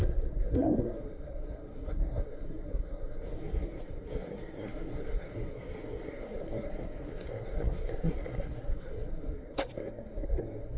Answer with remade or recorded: remade